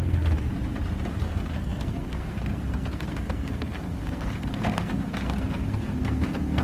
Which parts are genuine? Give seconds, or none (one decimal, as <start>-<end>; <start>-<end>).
0.5-1.1